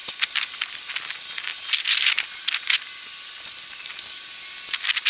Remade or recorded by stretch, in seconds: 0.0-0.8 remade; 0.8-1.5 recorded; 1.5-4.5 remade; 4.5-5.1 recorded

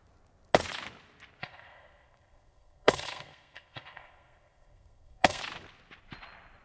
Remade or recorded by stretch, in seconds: 0.0-1.4 recorded; 1.4-5.4 remade; 5.4-6.6 recorded

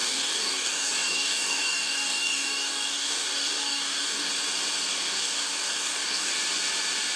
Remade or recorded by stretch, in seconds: 0.0-4.3 remade; 4.3-4.9 recorded; 4.9-6.3 remade; 6.3-7.2 recorded